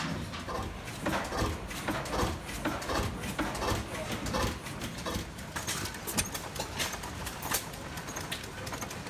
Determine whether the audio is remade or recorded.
recorded